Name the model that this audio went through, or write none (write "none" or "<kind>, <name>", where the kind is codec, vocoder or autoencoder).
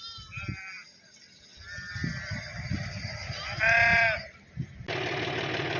none